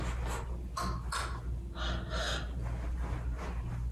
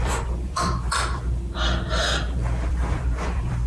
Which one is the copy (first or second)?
second